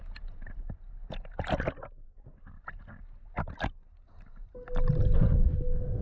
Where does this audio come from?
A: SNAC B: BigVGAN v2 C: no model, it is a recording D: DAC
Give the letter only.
C